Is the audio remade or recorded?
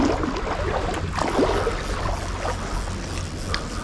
recorded